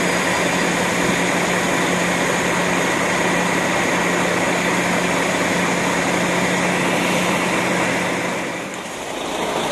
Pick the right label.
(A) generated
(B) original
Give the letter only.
B